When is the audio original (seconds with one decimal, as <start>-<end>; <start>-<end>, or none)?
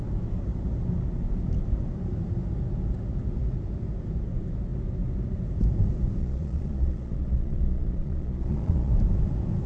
0.0-6.2; 8.9-9.7